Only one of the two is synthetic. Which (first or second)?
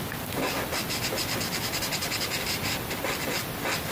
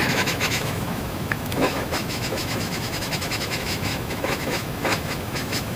second